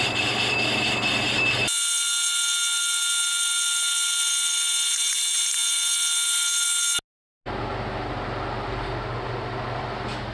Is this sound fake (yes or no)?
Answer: no